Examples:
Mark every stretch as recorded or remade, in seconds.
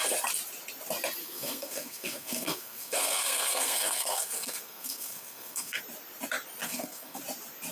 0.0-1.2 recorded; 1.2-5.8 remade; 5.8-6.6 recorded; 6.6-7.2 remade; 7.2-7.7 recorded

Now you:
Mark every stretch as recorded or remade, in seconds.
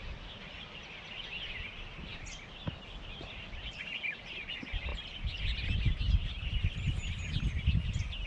0.0-8.3 recorded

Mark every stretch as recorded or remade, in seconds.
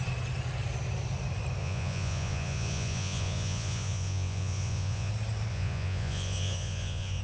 0.0-1.6 recorded; 1.6-5.1 remade; 5.1-5.5 recorded; 5.5-7.2 remade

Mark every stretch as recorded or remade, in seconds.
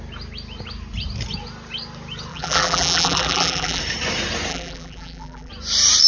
0.0-2.3 recorded; 2.3-3.8 remade; 3.8-4.5 recorded; 4.5-5.5 remade; 5.5-6.1 recorded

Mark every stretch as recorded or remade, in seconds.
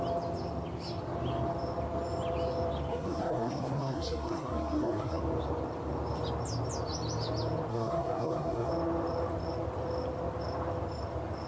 0.0-2.9 recorded; 2.9-5.2 remade; 5.2-7.7 recorded; 7.7-8.7 remade; 8.7-11.5 recorded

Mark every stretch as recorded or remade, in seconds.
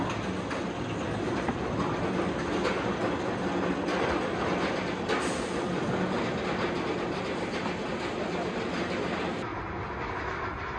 0.0-10.8 recorded